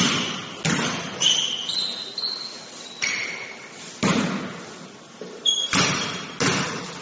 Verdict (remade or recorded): recorded